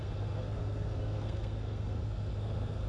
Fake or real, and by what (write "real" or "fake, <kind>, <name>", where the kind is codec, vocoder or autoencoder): fake, codec, SNAC